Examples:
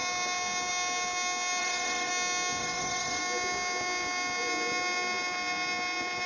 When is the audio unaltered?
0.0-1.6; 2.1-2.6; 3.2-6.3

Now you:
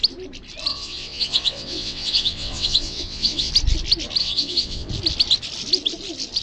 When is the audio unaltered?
0.0-0.7; 3.5-4.2; 4.9-6.4

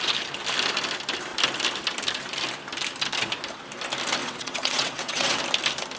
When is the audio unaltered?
0.0-4.2; 5.4-6.0

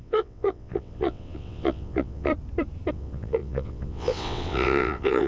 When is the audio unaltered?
2.3-2.9

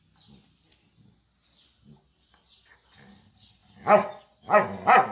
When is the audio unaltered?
0.0-5.1

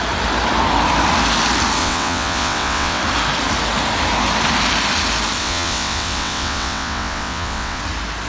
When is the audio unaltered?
0.0-1.8; 3.0-5.4; 7.8-8.3

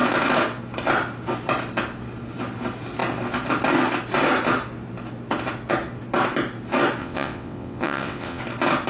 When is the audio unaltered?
0.0-7.0; 8.4-8.9

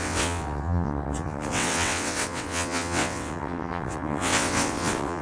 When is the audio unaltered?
none